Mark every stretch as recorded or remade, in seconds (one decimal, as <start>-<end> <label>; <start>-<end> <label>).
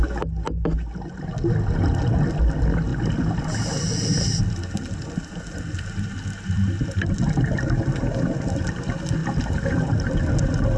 0.0-10.8 recorded